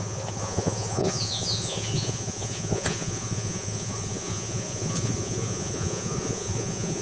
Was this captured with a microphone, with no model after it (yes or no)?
no